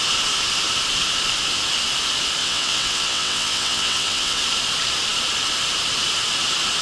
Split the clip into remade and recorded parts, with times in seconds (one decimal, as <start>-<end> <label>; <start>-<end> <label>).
0.0-2.4 recorded; 2.4-4.4 remade; 4.4-6.8 recorded